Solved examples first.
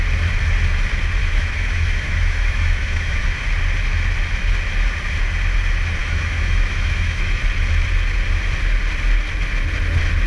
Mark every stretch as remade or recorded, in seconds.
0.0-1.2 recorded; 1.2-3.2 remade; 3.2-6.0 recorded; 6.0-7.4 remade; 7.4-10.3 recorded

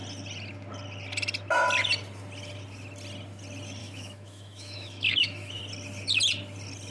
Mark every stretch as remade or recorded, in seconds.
0.0-3.8 recorded; 3.8-5.6 remade; 5.6-6.9 recorded

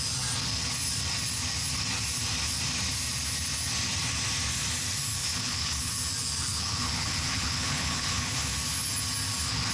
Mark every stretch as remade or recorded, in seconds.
0.0-5.2 recorded; 5.2-5.9 remade; 5.9-6.5 recorded; 6.5-8.5 remade; 8.5-9.7 recorded

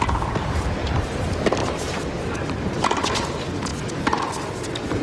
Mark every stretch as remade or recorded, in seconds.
0.0-1.6 recorded; 1.6-2.5 remade; 2.5-5.0 recorded

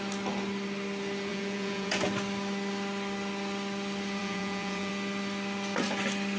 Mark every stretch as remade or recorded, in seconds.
0.0-1.3 recorded; 1.3-2.1 remade; 2.1-4.2 recorded; 4.2-4.9 remade; 4.9-6.4 recorded

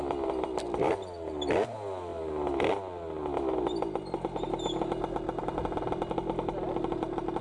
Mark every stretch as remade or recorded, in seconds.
0.0-7.4 recorded